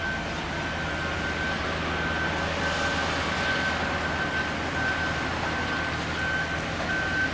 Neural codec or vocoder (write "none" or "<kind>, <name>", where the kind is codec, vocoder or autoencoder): none